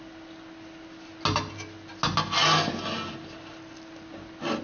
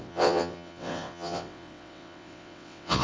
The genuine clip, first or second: first